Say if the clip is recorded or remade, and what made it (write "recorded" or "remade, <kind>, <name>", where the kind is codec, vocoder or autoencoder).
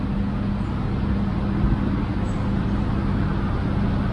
recorded